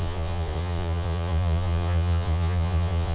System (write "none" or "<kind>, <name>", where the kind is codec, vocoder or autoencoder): vocoder, Vocos